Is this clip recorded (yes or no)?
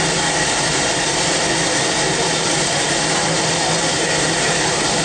yes